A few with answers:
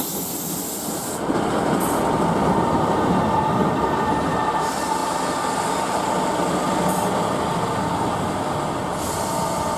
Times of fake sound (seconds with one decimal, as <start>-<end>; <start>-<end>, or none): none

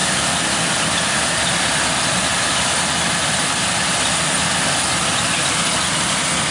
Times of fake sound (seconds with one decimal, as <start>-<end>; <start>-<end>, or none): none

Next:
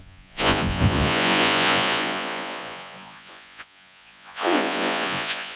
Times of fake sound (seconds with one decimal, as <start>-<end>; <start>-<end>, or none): 0.0-5.6